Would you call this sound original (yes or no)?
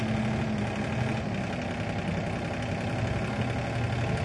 yes